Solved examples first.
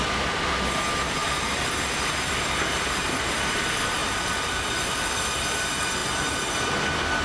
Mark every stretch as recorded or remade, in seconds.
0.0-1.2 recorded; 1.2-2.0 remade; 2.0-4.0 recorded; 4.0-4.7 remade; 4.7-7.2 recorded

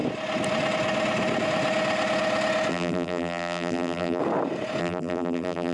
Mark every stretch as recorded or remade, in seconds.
0.0-2.7 recorded; 2.7-4.2 remade; 4.2-4.8 recorded; 4.8-5.7 remade

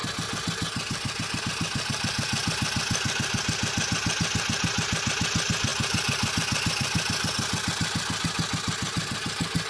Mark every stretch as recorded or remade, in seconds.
0.0-9.7 recorded

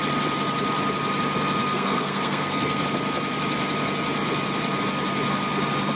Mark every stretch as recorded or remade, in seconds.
0.0-1.6 recorded; 1.6-2.8 remade; 2.8-6.0 recorded

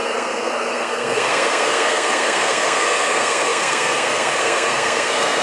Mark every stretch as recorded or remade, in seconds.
0.0-5.4 remade

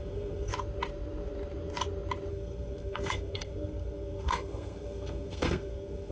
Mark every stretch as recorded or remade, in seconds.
0.0-0.5 remade; 0.5-2.3 recorded; 2.3-6.1 remade